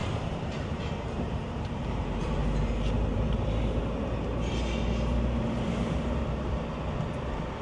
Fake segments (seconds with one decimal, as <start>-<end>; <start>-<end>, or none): 0.0-2.3; 3.1-3.8; 5.1-6.5